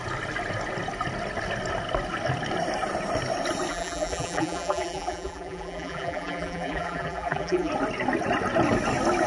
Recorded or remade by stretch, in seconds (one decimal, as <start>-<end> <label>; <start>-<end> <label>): 0.0-3.7 recorded; 3.7-7.7 remade; 7.7-9.3 recorded